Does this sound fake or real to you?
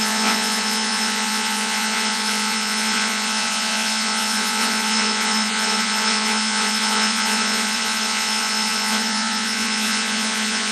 fake